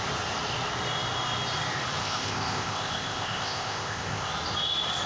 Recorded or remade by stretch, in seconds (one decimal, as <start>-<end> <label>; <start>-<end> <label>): 0.0-2.0 recorded; 2.0-4.3 remade; 4.3-5.1 recorded

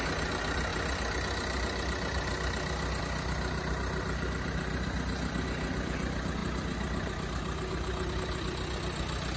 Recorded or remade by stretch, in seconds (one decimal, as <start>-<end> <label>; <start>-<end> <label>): 0.0-9.4 recorded

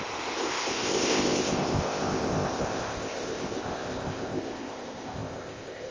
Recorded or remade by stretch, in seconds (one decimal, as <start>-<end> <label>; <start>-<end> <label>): 0.0-5.9 remade